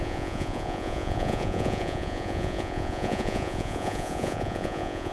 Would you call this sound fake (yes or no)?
yes